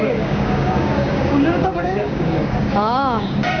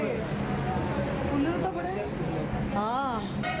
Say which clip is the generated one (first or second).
first